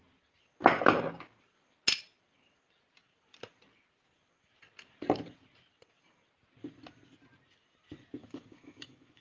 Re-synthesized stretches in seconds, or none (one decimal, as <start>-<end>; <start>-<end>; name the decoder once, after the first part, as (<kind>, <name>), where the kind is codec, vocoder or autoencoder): 8.2-9.2 (autoencoder, DAC-VAE)